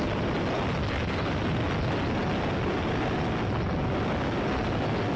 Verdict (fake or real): real